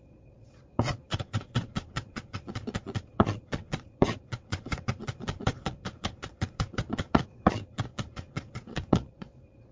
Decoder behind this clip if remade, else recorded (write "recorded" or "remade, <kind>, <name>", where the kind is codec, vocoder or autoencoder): remade, vocoder, Vocos